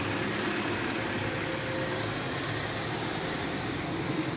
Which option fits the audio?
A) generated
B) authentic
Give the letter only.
B